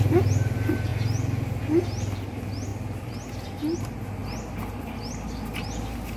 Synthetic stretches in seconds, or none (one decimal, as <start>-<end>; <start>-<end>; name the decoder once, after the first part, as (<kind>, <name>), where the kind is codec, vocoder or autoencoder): none